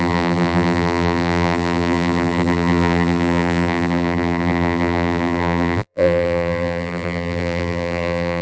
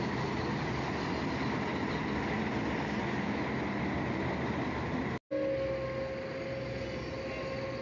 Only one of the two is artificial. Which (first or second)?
first